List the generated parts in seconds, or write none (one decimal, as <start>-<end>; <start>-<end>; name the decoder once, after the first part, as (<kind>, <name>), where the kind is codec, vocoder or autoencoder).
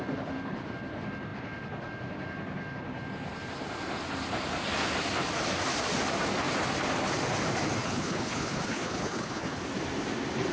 7.8-9.6 (codec, HILCodec)